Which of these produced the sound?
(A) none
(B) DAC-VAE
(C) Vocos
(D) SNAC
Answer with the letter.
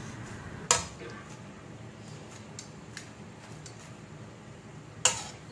A